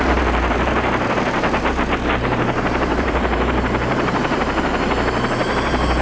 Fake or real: fake